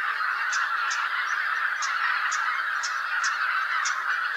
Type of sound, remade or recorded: recorded